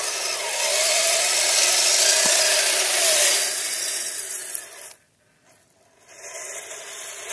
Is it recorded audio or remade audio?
recorded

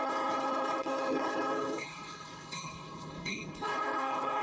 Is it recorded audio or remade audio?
remade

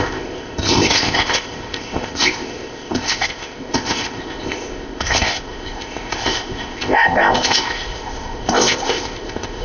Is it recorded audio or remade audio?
remade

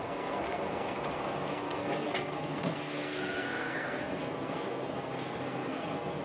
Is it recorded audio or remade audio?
remade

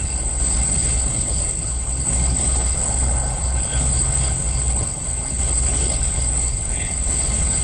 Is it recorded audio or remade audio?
remade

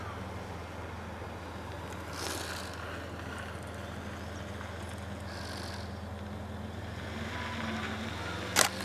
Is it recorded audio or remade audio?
recorded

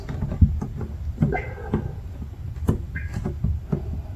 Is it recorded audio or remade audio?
recorded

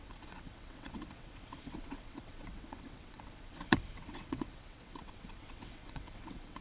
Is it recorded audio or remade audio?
remade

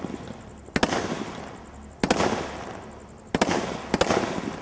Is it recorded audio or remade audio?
recorded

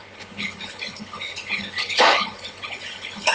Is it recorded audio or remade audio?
remade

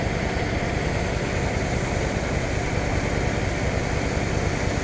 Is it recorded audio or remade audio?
recorded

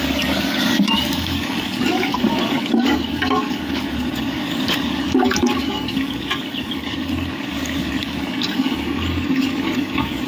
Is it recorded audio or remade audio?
remade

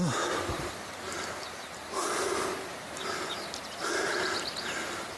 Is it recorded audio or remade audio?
recorded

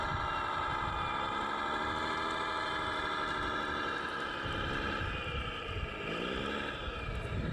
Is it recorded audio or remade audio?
recorded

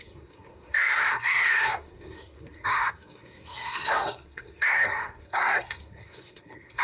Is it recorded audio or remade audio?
remade